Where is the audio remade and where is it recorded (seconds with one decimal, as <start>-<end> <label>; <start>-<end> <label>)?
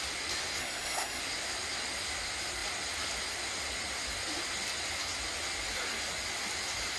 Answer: 0.0-0.6 recorded; 0.6-1.2 remade; 1.2-7.0 recorded